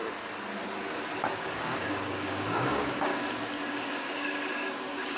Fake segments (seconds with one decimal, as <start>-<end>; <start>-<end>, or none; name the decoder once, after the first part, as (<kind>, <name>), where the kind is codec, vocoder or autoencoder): 1.2-3.1 (codec, DAC); 3.7-5.2